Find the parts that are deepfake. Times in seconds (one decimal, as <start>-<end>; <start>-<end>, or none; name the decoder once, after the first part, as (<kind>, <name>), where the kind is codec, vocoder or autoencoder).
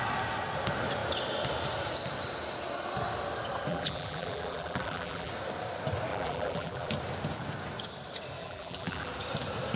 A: 3.7-5.3 (vocoder, BigVGAN v2); 6.1-6.9; 8.4-9.1